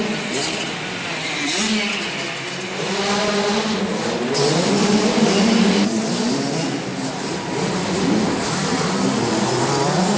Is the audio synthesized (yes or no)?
no